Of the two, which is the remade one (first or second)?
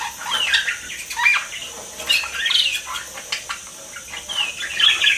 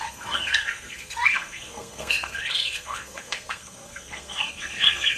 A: second